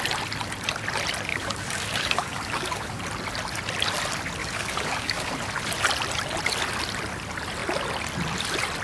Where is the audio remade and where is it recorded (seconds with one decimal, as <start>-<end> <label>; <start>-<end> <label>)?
0.0-1.3 recorded; 1.3-3.0 remade; 3.0-4.4 recorded; 4.4-5.3 remade; 5.3-8.8 recorded